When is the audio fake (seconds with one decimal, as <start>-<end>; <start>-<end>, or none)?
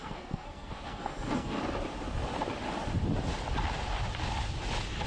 0.0-1.6